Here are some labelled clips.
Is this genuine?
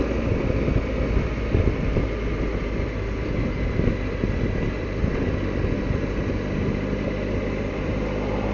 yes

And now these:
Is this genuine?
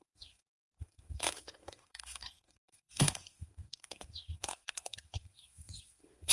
no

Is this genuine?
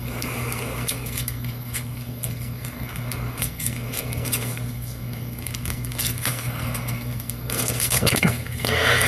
no